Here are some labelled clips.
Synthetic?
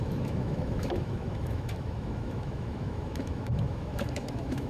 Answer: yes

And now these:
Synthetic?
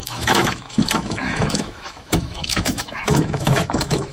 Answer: yes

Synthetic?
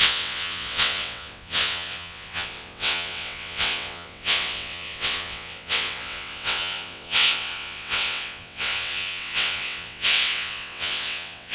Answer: yes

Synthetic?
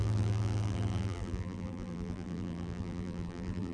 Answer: yes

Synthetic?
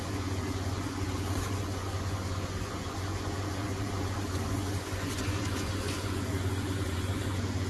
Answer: yes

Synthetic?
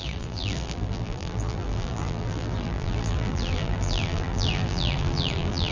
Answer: yes